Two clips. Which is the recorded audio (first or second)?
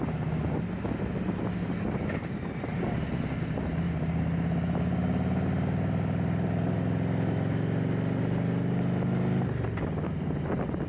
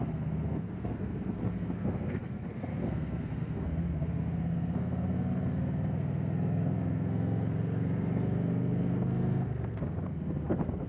first